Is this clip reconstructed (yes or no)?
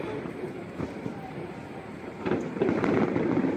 yes